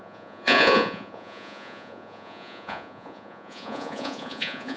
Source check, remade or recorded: remade